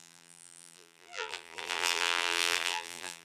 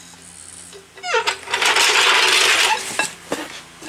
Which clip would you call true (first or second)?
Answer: second